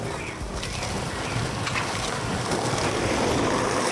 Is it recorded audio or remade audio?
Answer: recorded